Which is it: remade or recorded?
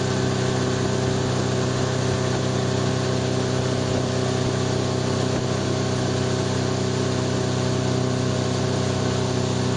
recorded